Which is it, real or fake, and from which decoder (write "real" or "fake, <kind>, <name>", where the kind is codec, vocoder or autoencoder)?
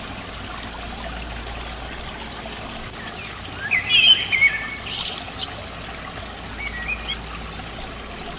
real